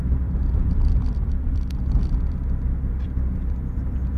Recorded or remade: remade